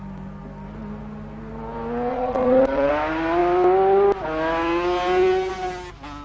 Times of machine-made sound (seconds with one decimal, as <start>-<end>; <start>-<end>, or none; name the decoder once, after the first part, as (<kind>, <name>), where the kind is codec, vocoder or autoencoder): 2.1-2.9 (vocoder, Vocos)

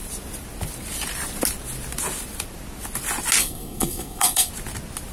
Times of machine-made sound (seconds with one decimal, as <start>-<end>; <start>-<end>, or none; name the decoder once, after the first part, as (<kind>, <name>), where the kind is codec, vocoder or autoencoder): 3.4-4.5 (codec, SNAC)